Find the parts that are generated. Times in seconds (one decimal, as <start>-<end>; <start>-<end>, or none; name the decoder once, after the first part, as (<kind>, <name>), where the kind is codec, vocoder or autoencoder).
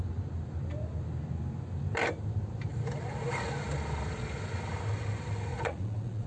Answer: 5.5-6.3 (vocoder, Vocos)